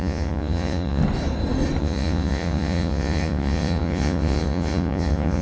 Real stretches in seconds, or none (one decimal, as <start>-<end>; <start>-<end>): 1.0-1.8